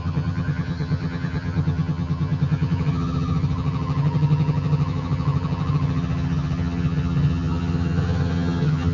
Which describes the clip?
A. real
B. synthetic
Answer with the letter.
B